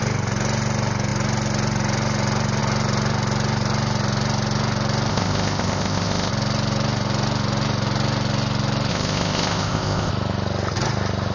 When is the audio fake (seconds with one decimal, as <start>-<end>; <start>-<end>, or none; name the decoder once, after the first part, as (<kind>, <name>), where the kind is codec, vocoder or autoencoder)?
5.1-6.3 (codec, ZipCodec); 8.9-10.1